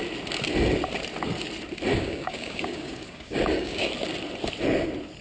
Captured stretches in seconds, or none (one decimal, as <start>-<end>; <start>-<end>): 0.0-1.9; 3.9-5.2

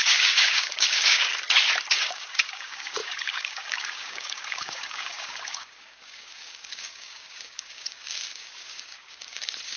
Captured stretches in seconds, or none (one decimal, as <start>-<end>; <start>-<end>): 1.3-2.0